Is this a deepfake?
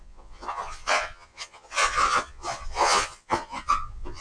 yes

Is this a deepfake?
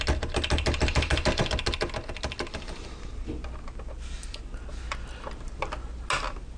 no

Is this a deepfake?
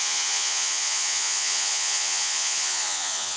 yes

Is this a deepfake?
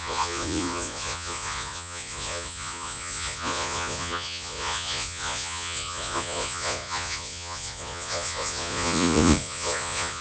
yes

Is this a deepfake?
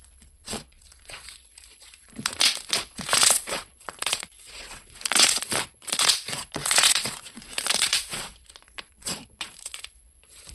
yes